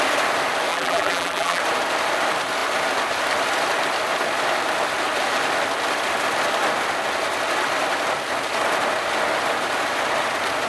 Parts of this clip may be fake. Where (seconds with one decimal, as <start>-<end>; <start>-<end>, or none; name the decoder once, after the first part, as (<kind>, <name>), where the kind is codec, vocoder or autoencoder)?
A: 0.7-1.6 (vocoder, BigVGAN v2)